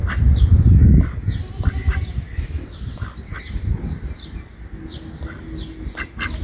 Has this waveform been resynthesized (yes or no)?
no